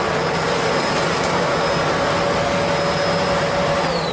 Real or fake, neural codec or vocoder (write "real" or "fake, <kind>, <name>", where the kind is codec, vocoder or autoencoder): real